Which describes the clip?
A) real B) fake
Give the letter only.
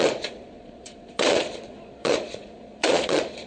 B